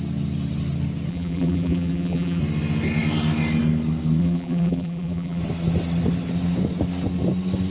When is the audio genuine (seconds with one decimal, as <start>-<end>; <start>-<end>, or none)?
0.0-1.1; 2.4-4.2; 5.4-7.7